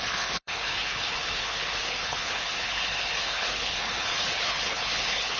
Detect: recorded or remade remade